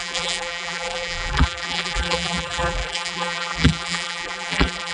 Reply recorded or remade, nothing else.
remade